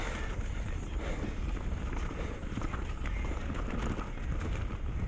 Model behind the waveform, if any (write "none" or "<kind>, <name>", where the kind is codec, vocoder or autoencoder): none